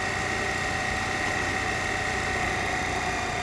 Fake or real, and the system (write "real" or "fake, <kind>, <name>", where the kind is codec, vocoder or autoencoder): real